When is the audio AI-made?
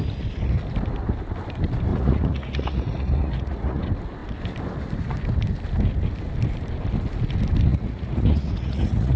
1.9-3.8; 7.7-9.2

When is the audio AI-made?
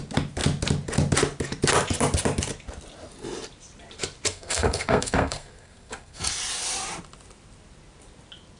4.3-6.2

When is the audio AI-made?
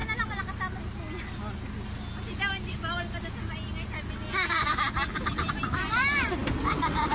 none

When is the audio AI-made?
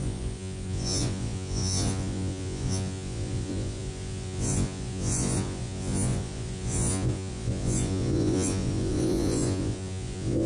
0.0-10.5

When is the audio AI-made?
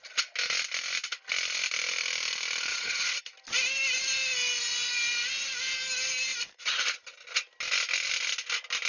2.7-3.2